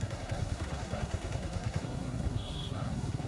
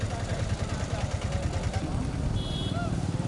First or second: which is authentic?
second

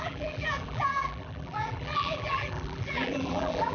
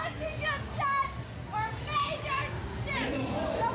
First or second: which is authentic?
second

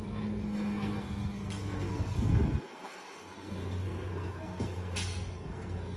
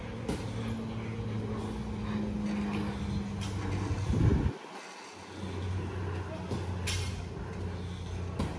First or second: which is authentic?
second